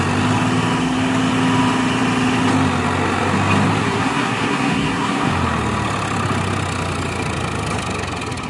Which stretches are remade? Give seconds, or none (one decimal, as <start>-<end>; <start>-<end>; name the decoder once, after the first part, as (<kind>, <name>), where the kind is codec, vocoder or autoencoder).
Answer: 3.8-5.3 (codec, SNAC)